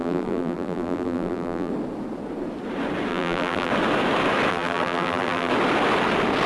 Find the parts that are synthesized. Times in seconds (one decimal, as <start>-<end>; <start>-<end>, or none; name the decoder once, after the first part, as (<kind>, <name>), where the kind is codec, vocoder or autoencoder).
0.0-1.7 (vocoder, BigVGAN v2); 3.1-3.7; 4.5-5.5